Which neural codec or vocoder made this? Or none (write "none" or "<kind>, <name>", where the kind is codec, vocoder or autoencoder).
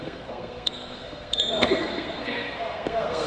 codec, SNAC